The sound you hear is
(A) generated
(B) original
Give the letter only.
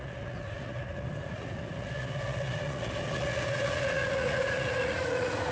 A